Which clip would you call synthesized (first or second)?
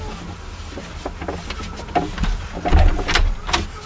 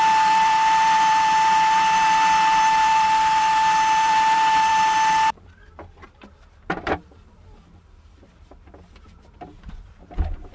second